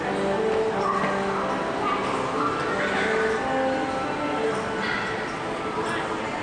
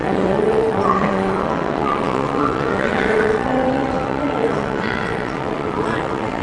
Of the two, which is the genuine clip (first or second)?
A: first